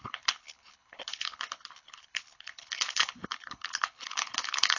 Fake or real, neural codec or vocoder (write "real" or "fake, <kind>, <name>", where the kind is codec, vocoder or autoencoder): fake, codec, HILCodec